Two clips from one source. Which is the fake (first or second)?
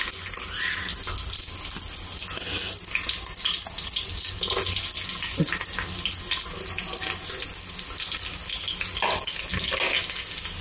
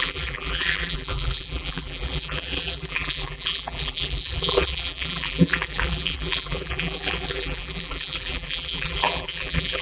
second